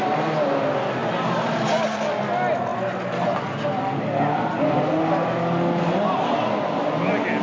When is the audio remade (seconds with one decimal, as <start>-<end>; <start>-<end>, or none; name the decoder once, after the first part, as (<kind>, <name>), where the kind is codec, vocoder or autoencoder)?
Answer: none